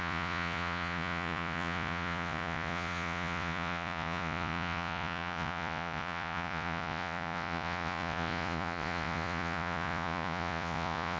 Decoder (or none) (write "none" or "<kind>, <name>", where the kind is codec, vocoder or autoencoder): vocoder, Vocos